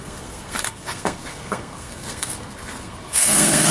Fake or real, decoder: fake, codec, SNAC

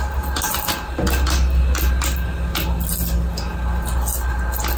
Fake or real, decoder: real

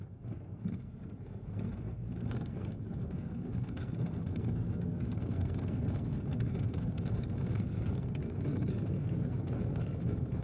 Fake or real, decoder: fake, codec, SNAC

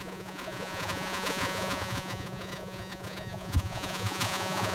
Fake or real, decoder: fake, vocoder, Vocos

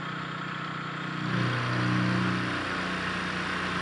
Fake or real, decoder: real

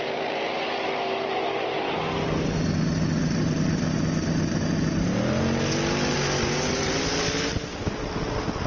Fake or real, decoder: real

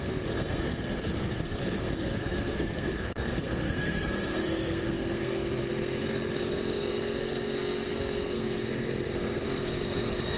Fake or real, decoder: fake, codec, SNAC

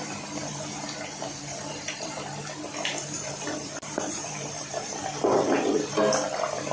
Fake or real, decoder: fake, vocoder, BigVGAN v2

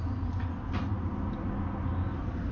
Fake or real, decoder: real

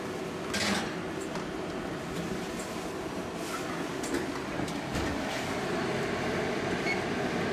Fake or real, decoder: real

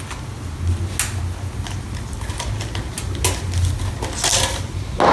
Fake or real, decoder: real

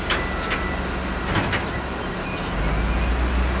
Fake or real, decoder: real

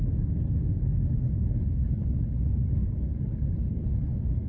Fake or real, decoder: fake, codec, HILCodec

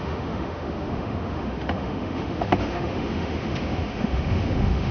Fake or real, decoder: fake, autoencoder, DAC-VAE